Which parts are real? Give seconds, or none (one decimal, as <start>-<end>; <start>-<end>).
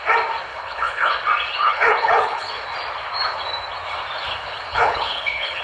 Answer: 0.0-0.5; 1.1-1.6; 2.5-4.7